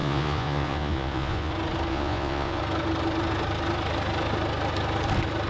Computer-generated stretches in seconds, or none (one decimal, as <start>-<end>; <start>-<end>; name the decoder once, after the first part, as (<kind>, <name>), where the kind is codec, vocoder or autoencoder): 0.0-1.5 (vocoder, Vocos); 1.9-2.6